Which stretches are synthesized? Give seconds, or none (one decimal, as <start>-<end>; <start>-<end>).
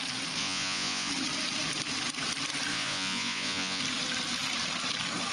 0.4-1.1; 2.7-3.8